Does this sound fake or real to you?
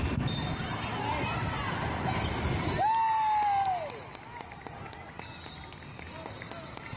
real